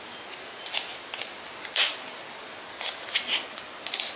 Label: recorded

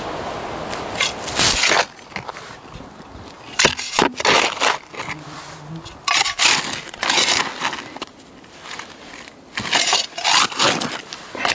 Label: recorded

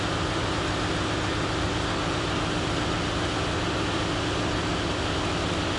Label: recorded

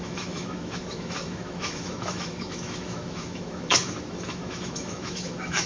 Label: remade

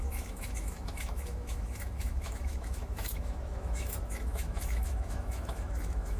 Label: remade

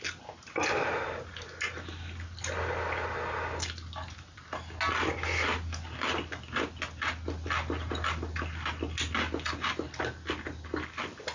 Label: recorded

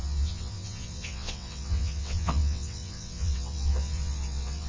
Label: remade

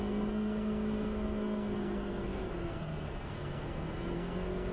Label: remade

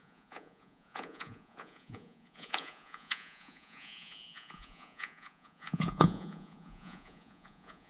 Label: remade